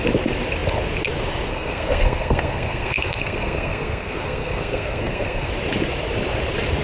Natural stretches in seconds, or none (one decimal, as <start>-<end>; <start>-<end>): 0.0-1.5; 5.5-6.8

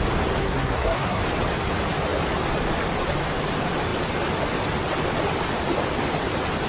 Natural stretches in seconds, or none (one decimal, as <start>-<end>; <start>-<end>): 0.0-0.4; 1.2-6.7

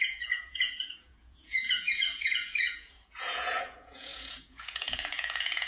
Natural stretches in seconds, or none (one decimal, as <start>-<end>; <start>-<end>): none

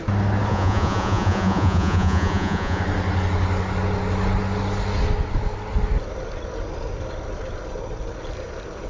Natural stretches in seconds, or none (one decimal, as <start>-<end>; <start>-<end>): 0.0-0.5; 2.8-8.9

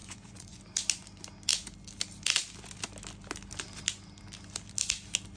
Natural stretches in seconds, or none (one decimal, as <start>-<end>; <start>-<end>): 0.6-5.4